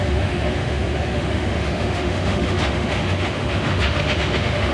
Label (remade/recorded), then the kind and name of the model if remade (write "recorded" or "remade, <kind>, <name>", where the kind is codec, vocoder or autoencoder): remade, autoencoder, DAC-VAE